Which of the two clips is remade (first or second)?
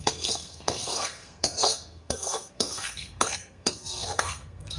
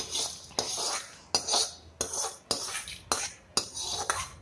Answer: first